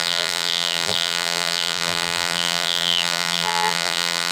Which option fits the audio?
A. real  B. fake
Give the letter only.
B